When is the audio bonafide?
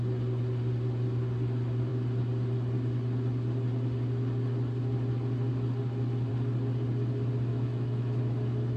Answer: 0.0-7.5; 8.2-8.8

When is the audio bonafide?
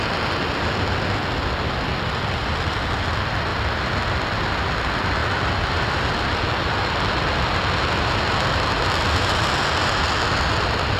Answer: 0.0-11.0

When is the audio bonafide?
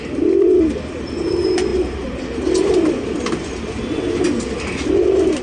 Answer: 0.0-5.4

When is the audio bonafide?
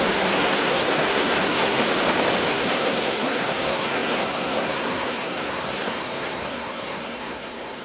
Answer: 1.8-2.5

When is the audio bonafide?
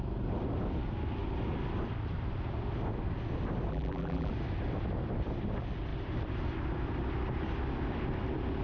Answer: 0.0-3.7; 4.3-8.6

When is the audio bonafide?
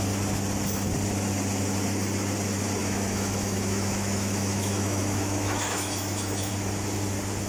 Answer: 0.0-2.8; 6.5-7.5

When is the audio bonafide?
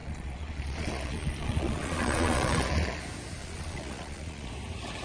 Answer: 3.0-3.4; 4.5-5.0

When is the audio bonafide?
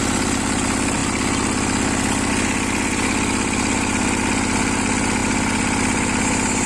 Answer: 0.0-6.7